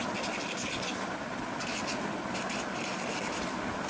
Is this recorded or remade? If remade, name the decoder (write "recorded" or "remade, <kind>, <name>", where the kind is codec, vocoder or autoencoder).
recorded